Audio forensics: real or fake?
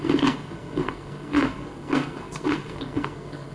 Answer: fake